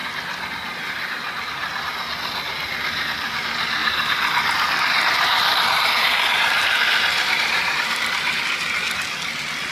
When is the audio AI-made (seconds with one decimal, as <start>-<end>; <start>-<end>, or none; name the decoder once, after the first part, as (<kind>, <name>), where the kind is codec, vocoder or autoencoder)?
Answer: 3.8-8.1 (vocoder, BigVGAN v2)